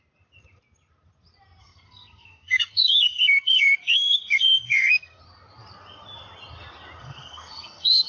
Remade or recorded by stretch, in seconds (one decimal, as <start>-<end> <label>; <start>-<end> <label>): 0.0-1.6 recorded; 1.6-5.2 remade; 5.2-7.0 recorded; 7.0-8.1 remade